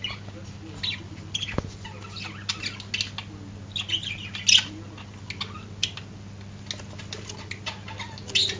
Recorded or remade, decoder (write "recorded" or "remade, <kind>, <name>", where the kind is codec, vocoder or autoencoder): recorded